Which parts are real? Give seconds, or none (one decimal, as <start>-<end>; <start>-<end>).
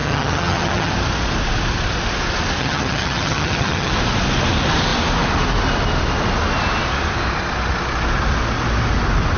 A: 0.9-2.6; 3.9-9.4